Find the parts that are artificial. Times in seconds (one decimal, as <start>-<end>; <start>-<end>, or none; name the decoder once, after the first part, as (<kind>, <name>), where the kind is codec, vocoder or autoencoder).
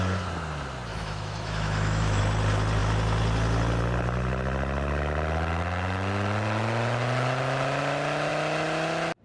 0.9-2.2 (autoencoder, DAC-VAE)